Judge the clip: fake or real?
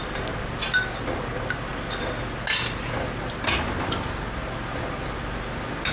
real